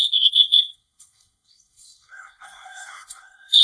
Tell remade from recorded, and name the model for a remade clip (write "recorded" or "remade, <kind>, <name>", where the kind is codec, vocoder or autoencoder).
remade, codec, SNAC